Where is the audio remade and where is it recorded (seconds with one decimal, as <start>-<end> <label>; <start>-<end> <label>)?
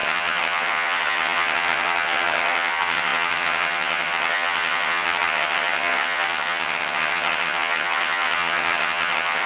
0.0-9.5 remade